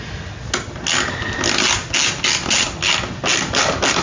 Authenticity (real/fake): real